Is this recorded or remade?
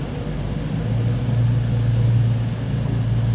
recorded